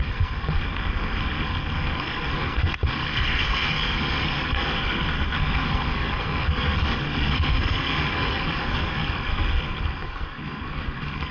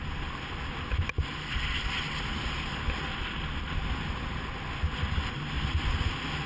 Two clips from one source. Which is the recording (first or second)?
second